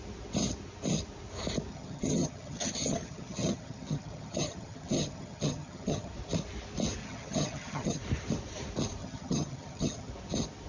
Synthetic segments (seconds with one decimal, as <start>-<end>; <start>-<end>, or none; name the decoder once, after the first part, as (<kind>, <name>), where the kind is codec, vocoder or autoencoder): 1.7-6.1 (vocoder, HiFi-GAN); 7.0-8.0; 9.0-10.1